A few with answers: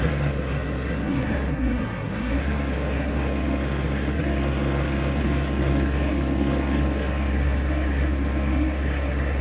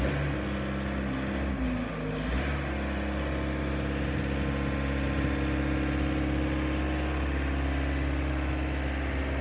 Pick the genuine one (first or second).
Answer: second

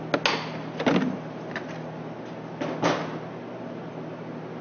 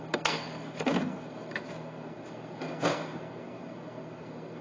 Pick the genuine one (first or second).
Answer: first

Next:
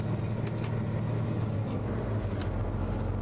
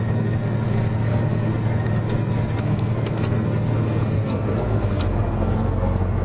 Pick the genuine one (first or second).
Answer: first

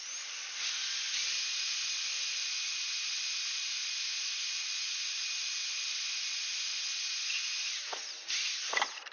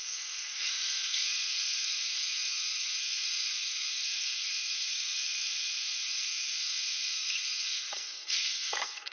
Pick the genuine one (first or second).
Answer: first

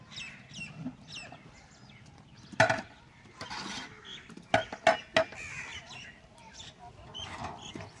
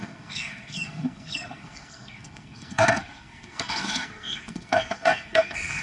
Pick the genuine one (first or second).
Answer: first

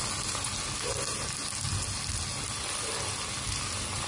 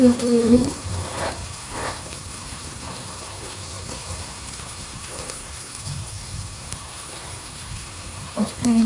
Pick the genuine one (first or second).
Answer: first